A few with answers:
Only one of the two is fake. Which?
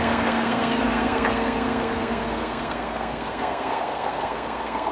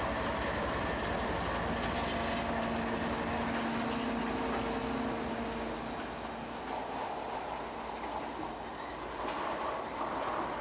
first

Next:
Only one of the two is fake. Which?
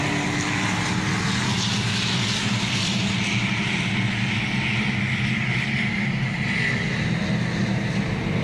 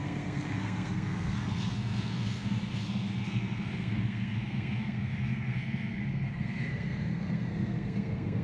second